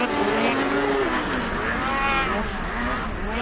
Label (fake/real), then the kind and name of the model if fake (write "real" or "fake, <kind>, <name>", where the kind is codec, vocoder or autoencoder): real